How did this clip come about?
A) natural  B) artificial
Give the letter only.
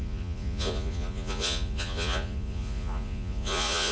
B